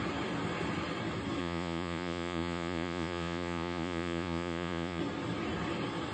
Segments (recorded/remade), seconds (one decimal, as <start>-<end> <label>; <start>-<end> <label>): 0.0-1.4 recorded; 1.4-5.0 remade; 5.0-6.1 recorded